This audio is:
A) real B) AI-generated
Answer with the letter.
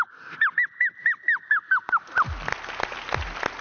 A